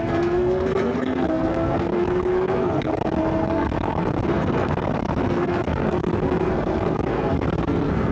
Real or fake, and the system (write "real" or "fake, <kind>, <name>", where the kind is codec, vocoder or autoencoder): fake, codec, SNAC